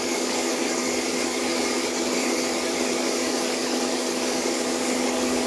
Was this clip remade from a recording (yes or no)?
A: yes